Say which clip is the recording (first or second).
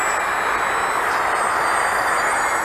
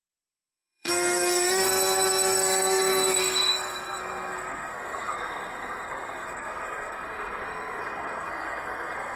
first